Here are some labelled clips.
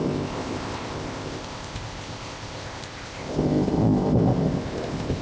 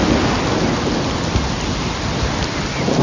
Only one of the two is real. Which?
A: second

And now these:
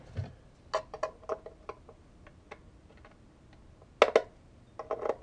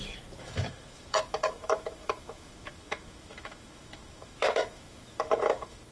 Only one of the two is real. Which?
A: first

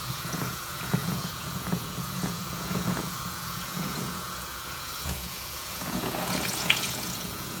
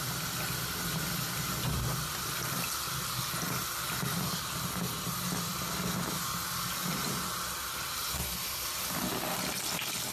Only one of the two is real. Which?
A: second